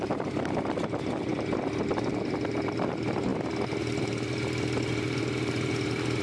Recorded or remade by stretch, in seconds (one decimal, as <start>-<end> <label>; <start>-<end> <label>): 0.0-3.3 remade; 3.3-5.5 recorded; 5.5-6.2 remade